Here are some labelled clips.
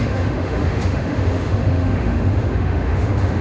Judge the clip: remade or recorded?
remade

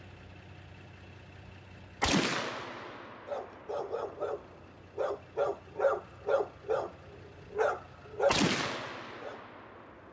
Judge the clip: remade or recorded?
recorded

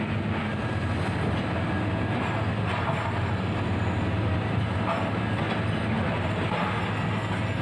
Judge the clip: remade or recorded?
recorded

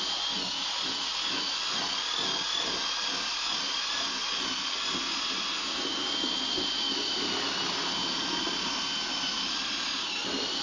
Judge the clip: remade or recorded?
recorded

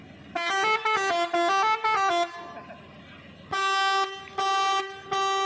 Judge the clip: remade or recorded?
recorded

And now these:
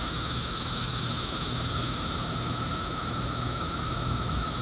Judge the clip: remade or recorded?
remade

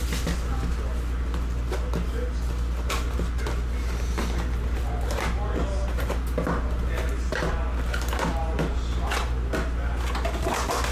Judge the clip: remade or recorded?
recorded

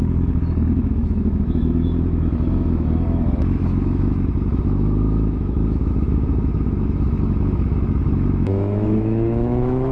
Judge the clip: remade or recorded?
remade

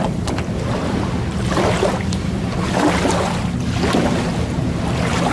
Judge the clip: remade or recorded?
recorded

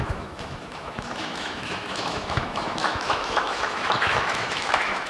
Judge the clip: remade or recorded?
remade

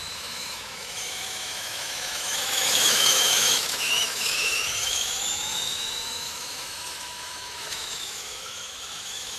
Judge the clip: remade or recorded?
remade